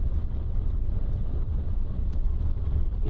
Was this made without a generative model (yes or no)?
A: no